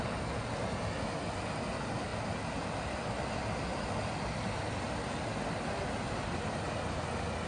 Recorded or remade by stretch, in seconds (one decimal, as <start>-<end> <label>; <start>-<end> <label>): 0.0-7.5 recorded